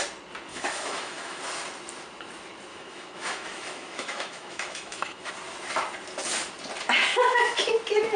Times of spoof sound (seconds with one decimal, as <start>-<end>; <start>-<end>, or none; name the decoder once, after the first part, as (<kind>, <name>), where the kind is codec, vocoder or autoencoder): 0.5-1.4 (autoencoder, DAC-VAE); 2.7-5.3; 7.1-7.7